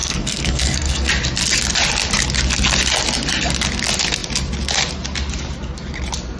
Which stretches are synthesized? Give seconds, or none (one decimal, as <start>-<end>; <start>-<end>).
0.0-1.1